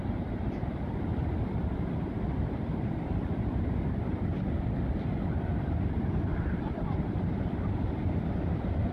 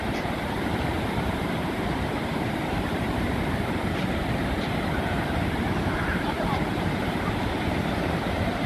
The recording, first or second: first